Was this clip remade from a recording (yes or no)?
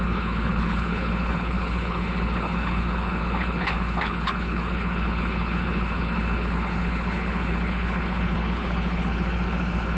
yes